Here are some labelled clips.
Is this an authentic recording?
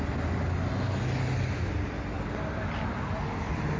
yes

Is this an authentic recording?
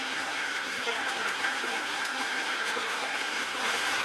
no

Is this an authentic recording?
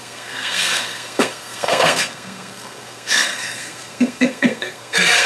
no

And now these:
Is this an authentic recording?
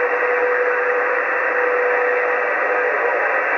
yes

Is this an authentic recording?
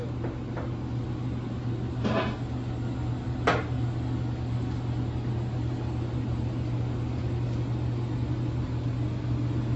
yes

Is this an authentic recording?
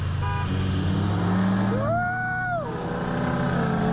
yes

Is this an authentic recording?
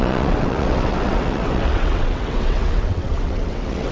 no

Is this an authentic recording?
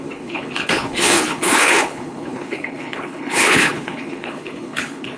no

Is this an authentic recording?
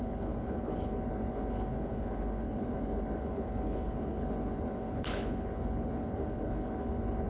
no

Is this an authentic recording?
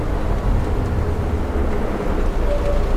yes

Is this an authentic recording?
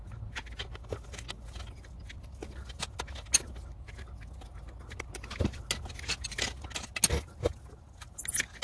yes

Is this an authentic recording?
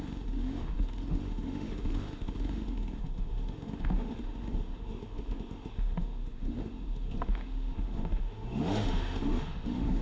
no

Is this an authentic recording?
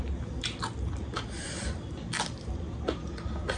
yes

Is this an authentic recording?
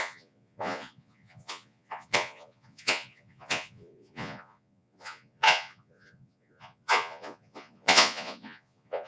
no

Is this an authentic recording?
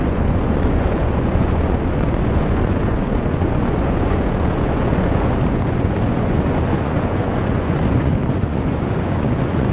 no